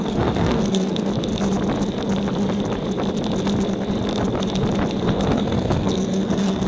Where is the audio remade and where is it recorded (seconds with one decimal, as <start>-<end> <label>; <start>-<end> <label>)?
0.0-1.1 remade; 1.1-5.0 recorded; 5.0-6.7 remade